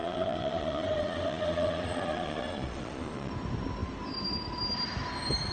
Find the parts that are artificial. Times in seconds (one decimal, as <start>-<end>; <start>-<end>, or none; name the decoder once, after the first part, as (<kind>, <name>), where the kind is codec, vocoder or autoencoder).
0.0-3.3 (vocoder, Vocos)